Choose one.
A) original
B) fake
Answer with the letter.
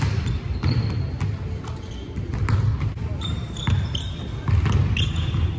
A